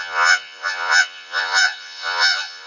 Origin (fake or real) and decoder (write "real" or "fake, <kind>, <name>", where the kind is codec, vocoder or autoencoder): fake, vocoder, Vocos